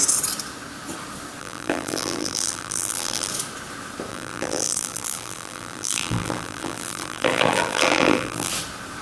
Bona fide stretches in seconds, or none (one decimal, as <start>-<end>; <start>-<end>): 0.0-1.4; 3.3-4.1; 8.5-9.0